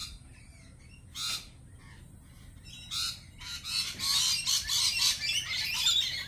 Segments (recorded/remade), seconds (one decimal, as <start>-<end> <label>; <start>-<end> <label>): 0.0-6.3 recorded